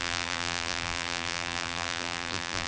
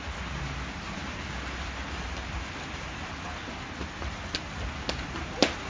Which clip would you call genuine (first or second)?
second